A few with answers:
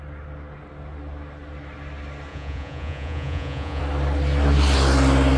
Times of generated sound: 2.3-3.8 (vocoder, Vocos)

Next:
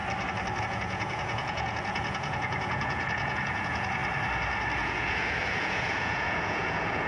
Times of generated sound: 0.6-4.0 (vocoder, Vocos); 4.8-7.1

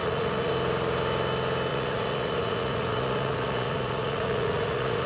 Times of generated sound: 0.0-0.5 (vocoder, Vocos); 1.7-5.1